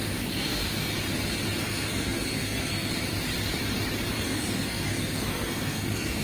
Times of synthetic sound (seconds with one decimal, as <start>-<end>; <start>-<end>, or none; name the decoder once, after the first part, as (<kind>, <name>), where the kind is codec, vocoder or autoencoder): 0.0-0.9 (codec, SNAC); 1.6-2.9; 4.1-6.2